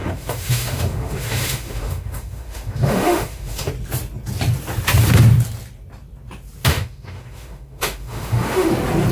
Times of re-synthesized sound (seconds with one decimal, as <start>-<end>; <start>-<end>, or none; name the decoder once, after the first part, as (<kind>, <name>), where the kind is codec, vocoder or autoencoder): 0.0-3.7 (autoencoder, DAC-VAE); 6.7-8.7